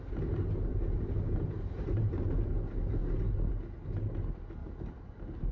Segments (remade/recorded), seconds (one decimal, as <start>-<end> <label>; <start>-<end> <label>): 0.0-0.7 recorded; 0.7-2.4 remade; 2.4-3.0 recorded; 3.0-3.5 remade; 3.5-4.6 recorded; 4.6-5.5 remade